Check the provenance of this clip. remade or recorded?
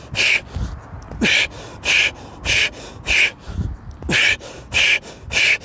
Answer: recorded